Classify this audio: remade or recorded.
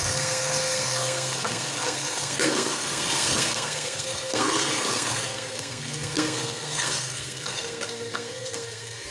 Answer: remade